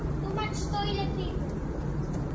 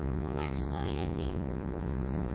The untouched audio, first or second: first